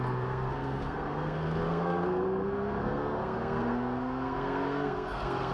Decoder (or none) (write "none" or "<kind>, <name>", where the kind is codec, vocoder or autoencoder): codec, SNAC